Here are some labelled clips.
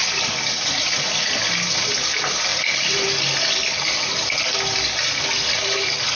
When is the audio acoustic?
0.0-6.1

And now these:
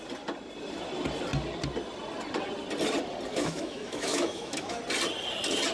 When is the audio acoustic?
0.0-3.3; 4.8-5.7